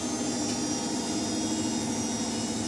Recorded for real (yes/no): yes